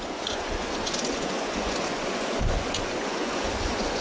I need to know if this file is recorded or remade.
remade